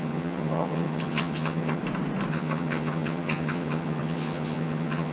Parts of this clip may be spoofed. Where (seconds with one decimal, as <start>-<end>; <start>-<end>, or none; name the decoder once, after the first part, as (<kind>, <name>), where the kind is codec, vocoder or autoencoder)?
0.0-1.8 (vocoder, HiFi-GAN); 2.3-5.1